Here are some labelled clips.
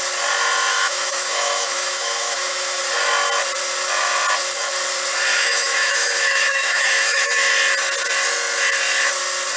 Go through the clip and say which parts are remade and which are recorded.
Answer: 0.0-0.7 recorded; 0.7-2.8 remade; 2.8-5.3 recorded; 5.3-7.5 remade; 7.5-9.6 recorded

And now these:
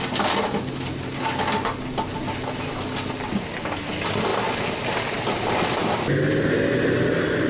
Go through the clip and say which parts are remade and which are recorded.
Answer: 0.0-7.5 recorded

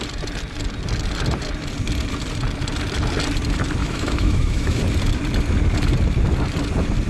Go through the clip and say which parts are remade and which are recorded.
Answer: 0.0-3.8 recorded; 3.8-4.8 remade; 4.8-7.1 recorded